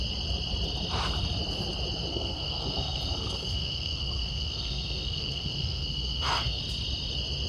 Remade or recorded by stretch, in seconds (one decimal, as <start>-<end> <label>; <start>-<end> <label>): 0.0-2.1 recorded; 2.1-6.6 remade; 6.6-7.5 recorded